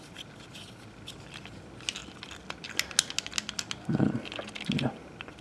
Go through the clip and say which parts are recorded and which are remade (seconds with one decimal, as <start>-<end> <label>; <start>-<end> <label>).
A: 0.0-5.4 recorded